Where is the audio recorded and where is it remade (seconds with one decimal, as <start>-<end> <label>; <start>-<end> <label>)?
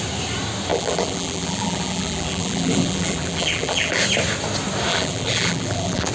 0.0-0.7 recorded; 0.7-4.0 remade; 4.0-4.9 recorded; 4.9-6.1 remade